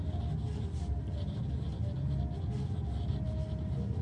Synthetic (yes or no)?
no